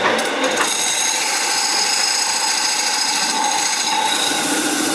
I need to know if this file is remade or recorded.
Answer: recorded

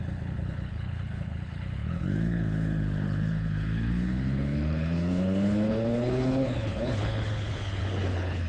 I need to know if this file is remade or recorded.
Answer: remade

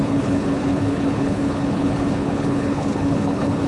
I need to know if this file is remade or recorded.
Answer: remade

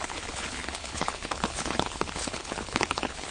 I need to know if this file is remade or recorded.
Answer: remade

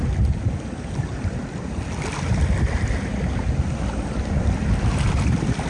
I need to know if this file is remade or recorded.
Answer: recorded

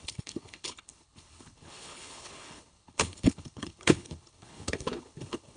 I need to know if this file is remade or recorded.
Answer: remade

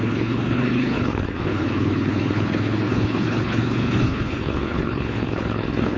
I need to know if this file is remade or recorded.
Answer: remade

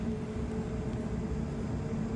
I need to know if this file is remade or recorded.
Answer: recorded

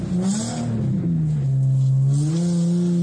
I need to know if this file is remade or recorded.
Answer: recorded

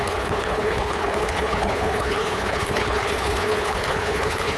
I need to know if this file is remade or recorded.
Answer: remade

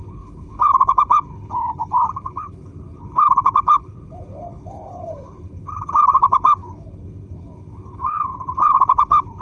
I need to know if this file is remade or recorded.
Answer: remade